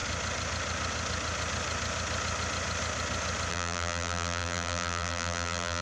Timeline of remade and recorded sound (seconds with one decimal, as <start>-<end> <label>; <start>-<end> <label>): 0.0-3.5 recorded; 3.5-5.8 remade